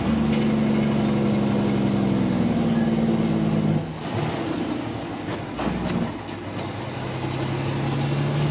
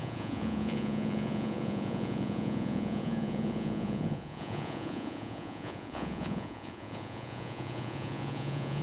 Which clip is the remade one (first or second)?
second